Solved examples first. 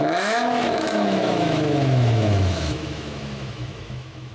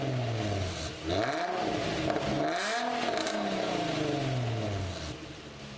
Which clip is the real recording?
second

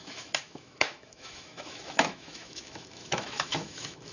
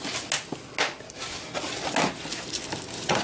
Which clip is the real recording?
second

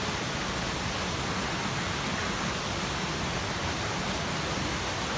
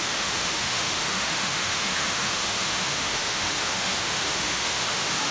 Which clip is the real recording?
first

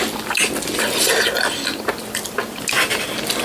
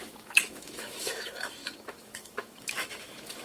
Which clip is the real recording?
first